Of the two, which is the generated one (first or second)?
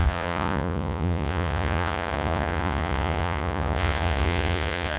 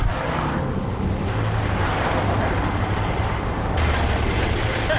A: first